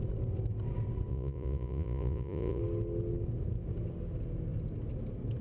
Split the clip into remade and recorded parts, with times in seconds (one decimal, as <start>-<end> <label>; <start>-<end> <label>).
0.0-1.1 recorded; 1.1-2.6 remade; 2.6-5.4 recorded